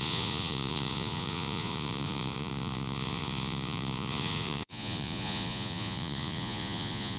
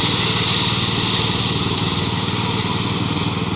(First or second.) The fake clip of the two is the first